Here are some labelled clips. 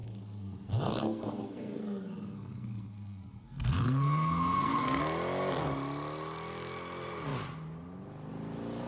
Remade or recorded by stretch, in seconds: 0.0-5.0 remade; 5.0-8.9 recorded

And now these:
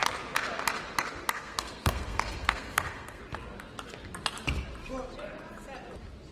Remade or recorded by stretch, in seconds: 0.0-1.3 recorded; 1.3-3.2 remade; 3.2-6.3 recorded

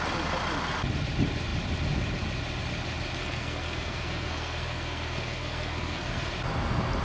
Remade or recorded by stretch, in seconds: 0.0-3.2 recorded; 3.2-6.3 remade; 6.3-7.0 recorded